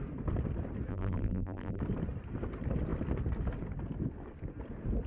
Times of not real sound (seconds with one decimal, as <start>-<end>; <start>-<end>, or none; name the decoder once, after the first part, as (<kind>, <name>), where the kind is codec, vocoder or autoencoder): 0.9-1.8 (vocoder, BigVGAN v2)